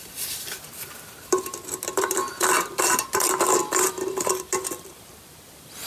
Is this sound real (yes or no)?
no